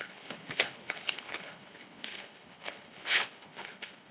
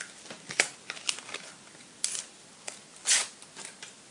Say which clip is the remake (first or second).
first